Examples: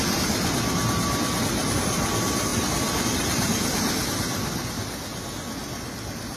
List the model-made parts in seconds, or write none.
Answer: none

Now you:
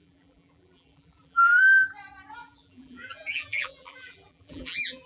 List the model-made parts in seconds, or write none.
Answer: 0.0-1.6 (vocoder, BigVGAN v2); 2.4-5.1

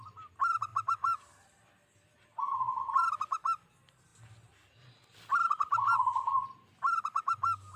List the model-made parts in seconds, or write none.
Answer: none